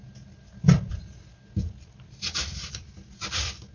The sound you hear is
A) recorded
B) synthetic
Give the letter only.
A